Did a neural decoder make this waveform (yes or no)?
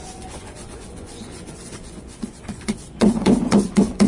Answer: yes